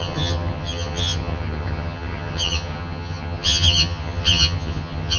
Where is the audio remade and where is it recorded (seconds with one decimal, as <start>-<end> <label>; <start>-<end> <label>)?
0.0-5.2 remade

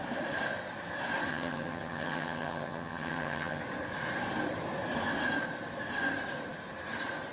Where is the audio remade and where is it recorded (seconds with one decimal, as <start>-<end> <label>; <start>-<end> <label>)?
0.0-1.3 recorded; 1.3-3.6 remade; 3.6-7.3 recorded

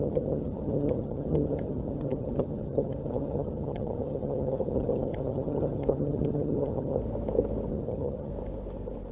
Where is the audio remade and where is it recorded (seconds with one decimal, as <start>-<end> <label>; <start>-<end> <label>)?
0.0-7.0 remade; 7.0-7.7 recorded; 7.7-8.3 remade; 8.3-9.1 recorded

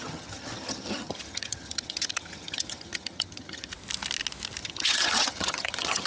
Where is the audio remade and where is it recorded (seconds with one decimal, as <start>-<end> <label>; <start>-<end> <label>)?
0.0-3.7 remade; 3.7-4.6 recorded; 4.6-6.1 remade

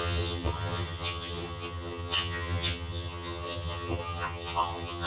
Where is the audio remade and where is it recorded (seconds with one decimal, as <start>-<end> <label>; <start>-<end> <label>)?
0.0-5.1 remade

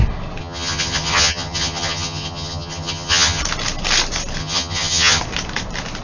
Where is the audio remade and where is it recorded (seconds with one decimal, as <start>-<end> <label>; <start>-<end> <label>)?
0.0-0.4 recorded; 0.4-3.4 remade; 3.4-4.4 recorded; 4.4-5.2 remade; 5.2-6.0 recorded